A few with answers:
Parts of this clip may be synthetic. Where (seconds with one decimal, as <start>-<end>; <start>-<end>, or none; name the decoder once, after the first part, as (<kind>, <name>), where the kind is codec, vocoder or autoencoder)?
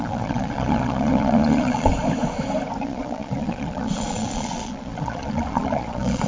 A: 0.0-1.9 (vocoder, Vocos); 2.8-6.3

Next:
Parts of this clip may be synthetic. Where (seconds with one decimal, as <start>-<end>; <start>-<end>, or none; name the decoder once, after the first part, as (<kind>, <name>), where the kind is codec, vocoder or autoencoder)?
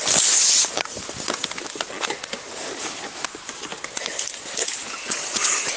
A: 5.0-5.8 (vocoder, Vocos)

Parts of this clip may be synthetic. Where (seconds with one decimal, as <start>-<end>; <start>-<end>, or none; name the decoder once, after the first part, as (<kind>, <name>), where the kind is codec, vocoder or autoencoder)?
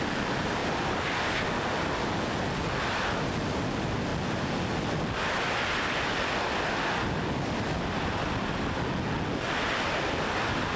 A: none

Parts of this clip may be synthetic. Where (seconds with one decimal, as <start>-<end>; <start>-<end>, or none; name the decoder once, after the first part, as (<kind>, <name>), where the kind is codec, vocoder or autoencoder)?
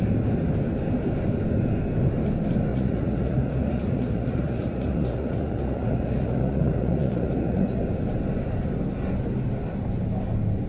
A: 2.7-7.8 (vocoder, Vocos)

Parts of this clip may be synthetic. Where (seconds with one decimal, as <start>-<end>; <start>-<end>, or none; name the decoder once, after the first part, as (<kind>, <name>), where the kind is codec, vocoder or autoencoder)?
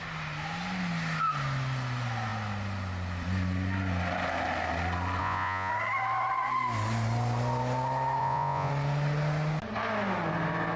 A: 5.2-5.7 (vocoder, Vocos); 8.2-8.7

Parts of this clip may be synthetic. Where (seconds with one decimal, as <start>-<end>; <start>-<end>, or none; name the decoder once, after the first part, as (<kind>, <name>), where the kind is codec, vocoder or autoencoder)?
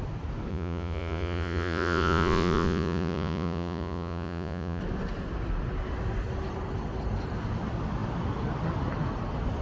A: 0.5-4.8 (vocoder, Vocos)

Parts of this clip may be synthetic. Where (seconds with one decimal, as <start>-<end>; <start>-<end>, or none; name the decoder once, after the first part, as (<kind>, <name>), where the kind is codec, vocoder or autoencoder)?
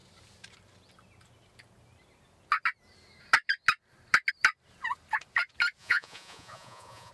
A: 5.8-7.1 (vocoder, Vocos)